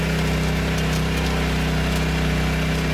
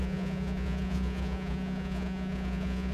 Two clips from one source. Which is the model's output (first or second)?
second